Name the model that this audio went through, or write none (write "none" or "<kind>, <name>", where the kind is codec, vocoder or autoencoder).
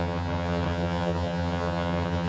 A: vocoder, HiFi-GAN